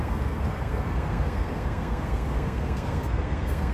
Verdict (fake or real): fake